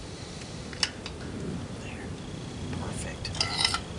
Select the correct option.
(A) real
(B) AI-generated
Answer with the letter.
A